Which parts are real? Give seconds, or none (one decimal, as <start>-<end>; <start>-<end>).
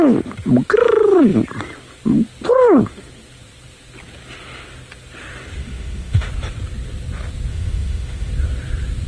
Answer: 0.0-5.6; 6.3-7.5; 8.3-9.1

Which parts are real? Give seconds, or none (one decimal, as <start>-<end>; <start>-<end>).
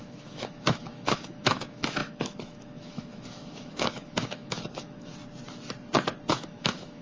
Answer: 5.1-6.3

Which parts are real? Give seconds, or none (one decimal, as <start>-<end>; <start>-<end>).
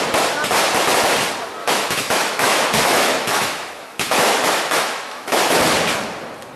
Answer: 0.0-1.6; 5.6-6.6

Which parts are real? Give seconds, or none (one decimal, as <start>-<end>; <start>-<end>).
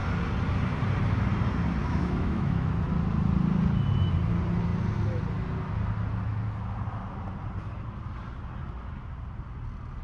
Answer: 0.0-1.8; 2.7-10.0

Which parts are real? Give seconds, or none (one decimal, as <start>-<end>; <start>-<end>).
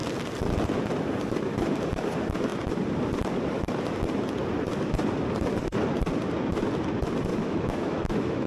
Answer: 0.0-7.3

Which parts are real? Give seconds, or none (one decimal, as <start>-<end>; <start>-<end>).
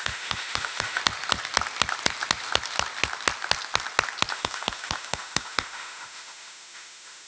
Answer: 1.0-4.3